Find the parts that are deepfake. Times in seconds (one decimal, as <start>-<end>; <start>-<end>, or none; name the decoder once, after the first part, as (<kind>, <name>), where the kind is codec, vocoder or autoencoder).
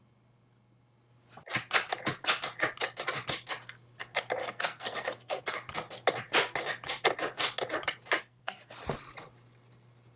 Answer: 4.4-5.4 (codec, SNAC); 8.2-8.7